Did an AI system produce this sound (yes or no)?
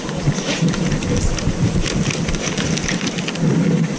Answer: no